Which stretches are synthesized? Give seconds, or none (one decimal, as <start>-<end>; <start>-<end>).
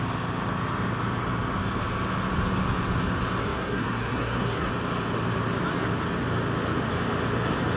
3.4-4.7